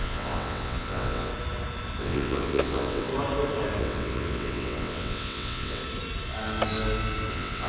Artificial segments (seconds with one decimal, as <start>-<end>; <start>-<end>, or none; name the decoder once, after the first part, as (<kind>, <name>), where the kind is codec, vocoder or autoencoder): 0.0-1.3 (vocoder, WaveNeXt); 2.0-3.1; 3.8-5.8; 7.3-7.7